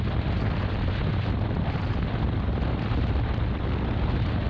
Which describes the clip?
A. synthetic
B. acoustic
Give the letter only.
B